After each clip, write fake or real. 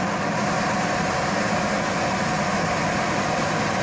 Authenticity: real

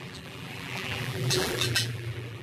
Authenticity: fake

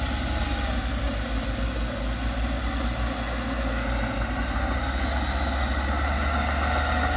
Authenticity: real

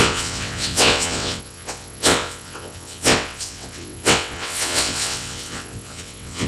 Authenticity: fake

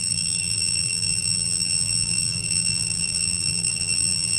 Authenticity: fake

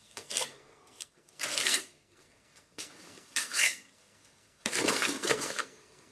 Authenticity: fake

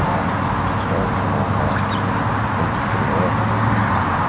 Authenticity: real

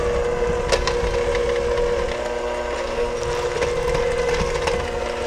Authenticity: real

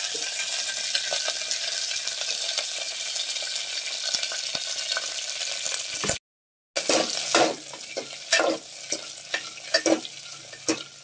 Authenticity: real